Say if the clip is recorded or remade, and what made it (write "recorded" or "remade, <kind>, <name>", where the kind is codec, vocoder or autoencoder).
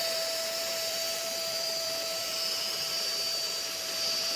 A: remade, vocoder, BigVGAN v2